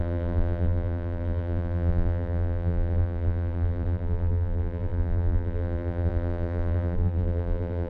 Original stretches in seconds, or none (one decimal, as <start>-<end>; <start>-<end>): none